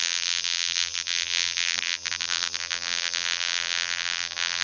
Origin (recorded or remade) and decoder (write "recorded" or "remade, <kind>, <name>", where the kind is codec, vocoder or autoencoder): remade, vocoder, BigVGAN v2